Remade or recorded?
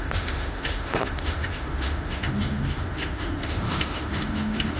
remade